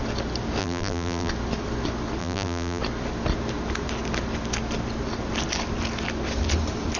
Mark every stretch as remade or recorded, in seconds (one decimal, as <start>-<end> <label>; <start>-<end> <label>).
0.0-0.6 recorded; 0.6-1.3 remade; 1.3-2.2 recorded; 2.2-2.8 remade; 2.8-7.0 recorded